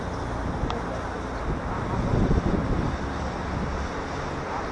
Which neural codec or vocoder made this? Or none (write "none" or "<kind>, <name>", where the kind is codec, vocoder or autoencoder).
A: none